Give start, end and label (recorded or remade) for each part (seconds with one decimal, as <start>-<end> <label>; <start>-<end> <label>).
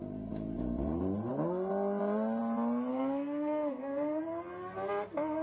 0.0-2.9 recorded; 2.9-4.2 remade; 4.2-5.4 recorded